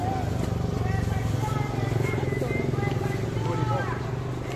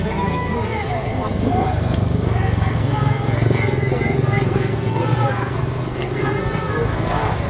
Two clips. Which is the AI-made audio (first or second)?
second